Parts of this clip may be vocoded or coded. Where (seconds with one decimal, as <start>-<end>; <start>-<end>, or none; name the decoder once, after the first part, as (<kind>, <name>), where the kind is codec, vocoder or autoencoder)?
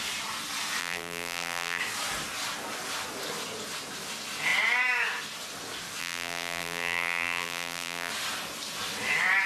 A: 0.8-1.8 (vocoder, BigVGAN v2); 6.0-8.1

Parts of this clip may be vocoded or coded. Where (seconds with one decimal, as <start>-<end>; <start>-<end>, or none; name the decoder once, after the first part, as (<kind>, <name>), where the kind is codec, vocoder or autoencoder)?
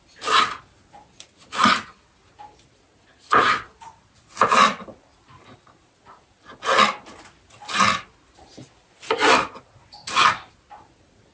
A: none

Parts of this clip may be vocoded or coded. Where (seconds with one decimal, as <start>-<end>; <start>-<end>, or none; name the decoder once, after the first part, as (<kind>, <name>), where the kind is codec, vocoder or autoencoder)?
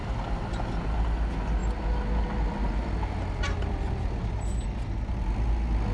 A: none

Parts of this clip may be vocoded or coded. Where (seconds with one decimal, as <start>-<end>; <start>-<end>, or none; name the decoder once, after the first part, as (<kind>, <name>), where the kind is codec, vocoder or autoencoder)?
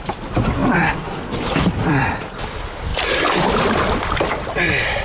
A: 0.0-0.6 (vocoder, BigVGAN v2); 1.3-2.9; 3.5-5.0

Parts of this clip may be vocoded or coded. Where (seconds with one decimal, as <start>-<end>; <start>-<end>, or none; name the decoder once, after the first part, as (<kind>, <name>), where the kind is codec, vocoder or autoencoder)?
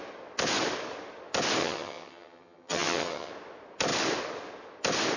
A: 1.6-3.3 (vocoder, HiFi-GAN)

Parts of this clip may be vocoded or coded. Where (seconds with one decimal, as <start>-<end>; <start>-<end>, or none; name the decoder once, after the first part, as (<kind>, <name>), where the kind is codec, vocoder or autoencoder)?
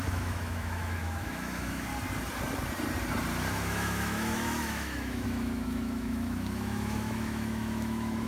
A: 0.0-1.9 (autoencoder, DAC-VAE); 3.5-8.3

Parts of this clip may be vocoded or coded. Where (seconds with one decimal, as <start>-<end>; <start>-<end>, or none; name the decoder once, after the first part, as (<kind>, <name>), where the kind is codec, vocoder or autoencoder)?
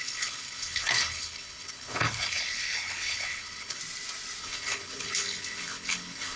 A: 0.0-3.8 (codec, HILCodec); 4.4-6.4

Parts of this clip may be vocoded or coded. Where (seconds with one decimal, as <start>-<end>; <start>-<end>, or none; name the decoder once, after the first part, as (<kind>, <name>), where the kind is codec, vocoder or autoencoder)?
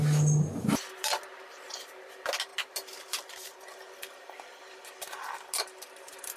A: none